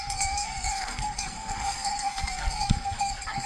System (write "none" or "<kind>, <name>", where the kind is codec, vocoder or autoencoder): codec, SNAC